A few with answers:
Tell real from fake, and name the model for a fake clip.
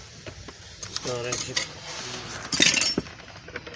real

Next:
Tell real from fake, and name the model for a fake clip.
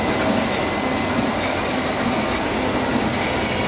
real